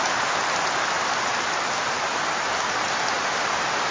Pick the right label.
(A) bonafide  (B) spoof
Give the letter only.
A